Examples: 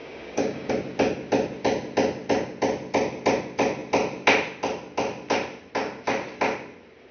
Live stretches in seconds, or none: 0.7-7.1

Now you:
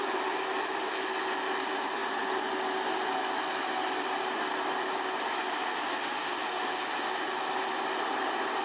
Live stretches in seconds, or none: 0.0-8.6

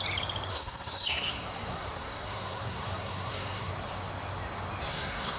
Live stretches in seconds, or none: 0.0-0.5; 3.7-4.9